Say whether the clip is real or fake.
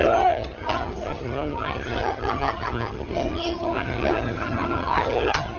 fake